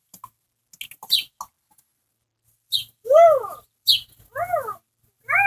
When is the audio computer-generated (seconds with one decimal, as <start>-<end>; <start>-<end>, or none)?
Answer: none